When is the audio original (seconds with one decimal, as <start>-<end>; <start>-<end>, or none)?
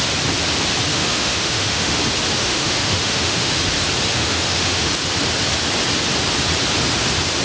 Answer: 0.0-0.9; 2.0-2.4; 3.6-4.1; 4.9-7.4